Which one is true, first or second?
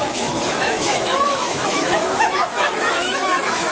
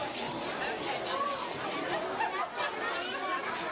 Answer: second